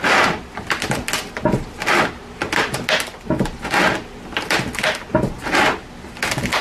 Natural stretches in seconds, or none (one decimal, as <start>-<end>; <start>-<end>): 0.0-6.6